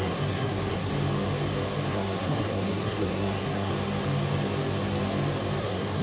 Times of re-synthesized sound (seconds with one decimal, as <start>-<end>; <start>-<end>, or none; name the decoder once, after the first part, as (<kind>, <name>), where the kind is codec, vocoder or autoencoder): 0.0-0.9 (codec, SNAC); 1.9-3.7; 5.6-6.0